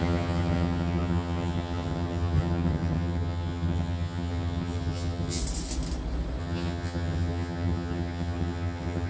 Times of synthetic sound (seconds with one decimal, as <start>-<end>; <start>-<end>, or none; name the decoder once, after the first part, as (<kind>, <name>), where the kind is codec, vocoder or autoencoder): 0.0-5.4 (vocoder, HiFi-GAN); 6.4-9.1